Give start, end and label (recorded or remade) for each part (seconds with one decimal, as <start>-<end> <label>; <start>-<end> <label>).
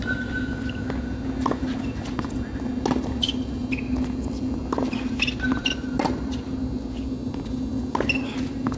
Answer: 0.0-8.8 recorded